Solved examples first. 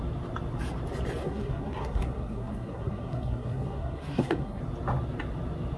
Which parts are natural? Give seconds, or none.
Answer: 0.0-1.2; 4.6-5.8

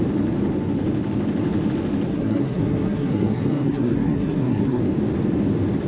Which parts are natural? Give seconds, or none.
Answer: 0.0-2.1; 4.8-5.9

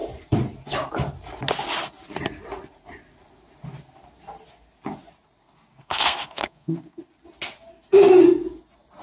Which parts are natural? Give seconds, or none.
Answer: 0.0-5.4; 7.0-9.0